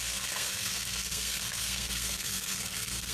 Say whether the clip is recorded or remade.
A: remade